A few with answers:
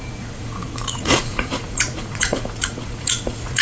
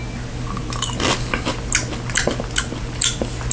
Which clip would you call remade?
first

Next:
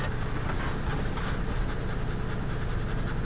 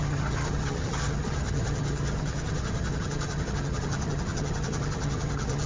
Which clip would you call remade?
second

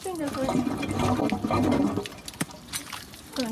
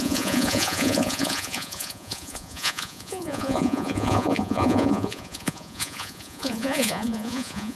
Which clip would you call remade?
second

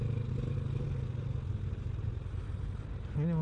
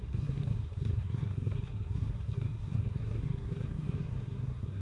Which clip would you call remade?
second